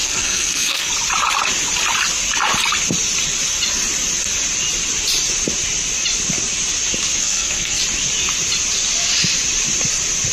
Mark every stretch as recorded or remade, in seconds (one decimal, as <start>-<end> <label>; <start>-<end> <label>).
0.0-0.9 remade; 0.9-7.2 recorded; 7.2-7.8 remade; 7.8-10.3 recorded